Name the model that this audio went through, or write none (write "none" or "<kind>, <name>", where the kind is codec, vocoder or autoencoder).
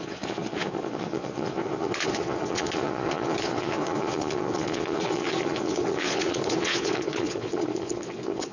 vocoder, Vocos